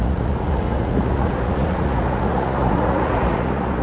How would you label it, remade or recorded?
remade